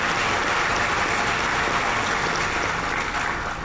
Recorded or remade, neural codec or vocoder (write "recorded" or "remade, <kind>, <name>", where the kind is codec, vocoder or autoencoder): recorded